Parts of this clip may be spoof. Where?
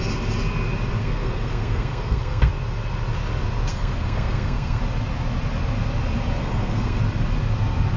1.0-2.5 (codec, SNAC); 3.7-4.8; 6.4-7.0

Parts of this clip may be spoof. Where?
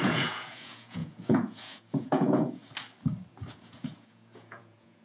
0.0-2.6 (vocoder, Vocos); 3.5-5.0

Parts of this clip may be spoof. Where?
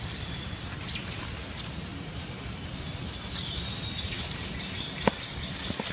1.9-5.4 (vocoder, BigVGAN v2)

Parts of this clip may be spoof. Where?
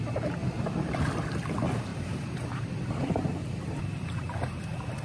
0.4-1.0 (vocoder, BigVGAN v2); 1.9-4.6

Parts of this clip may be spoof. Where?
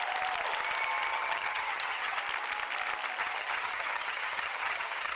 1.1-2.2 (vocoder, HiFi-GAN); 3.2-5.2